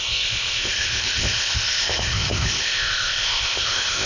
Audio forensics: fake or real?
fake